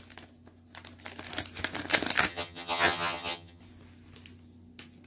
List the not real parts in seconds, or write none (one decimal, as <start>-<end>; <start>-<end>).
2.3-3.6